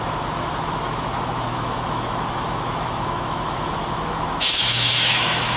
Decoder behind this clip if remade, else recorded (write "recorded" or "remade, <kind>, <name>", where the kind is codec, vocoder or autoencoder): remade, autoencoder, DAC-VAE